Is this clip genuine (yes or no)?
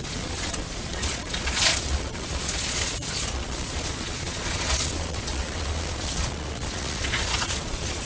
no